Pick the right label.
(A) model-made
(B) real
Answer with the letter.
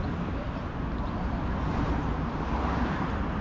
B